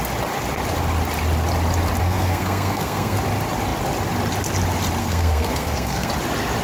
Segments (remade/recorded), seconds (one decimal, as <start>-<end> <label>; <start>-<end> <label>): 0.0-2.0 recorded; 2.0-3.2 remade; 3.2-5.0 recorded; 5.0-6.1 remade; 6.1-6.6 recorded

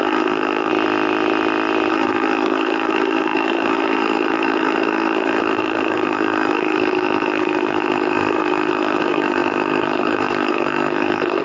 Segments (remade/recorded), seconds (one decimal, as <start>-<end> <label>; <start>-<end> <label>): 0.0-0.7 remade; 0.7-1.9 recorded; 1.9-11.4 remade

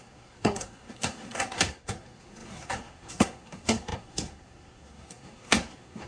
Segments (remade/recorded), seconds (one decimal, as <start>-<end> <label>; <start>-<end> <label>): 0.0-6.1 remade

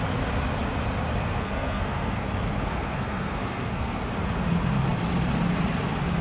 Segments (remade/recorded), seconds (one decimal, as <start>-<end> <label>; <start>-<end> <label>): 0.0-1.2 recorded; 1.2-4.0 remade; 4.0-6.2 recorded

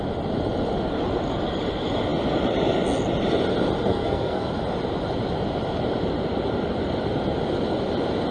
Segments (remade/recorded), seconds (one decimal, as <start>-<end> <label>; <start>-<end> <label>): 0.0-3.9 recorded; 3.9-4.5 remade; 4.5-8.3 recorded

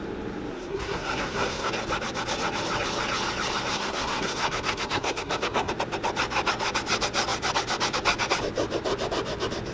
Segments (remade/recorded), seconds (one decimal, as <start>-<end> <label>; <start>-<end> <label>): 0.0-0.5 recorded; 0.5-1.7 remade; 1.7-3.7 recorded; 3.7-5.7 remade; 5.7-9.7 recorded

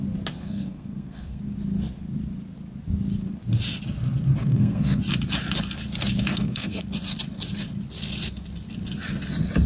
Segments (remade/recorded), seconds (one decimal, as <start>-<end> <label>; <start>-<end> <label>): 0.0-0.4 recorded; 0.4-1.4 remade; 1.4-4.4 recorded; 4.4-5.0 remade; 5.0-6.3 recorded; 6.3-6.8 remade; 6.8-9.7 recorded